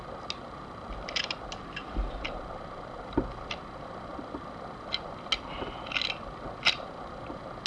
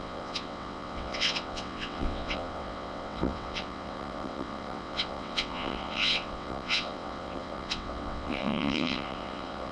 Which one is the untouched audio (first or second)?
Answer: first